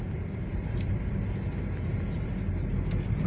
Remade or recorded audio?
recorded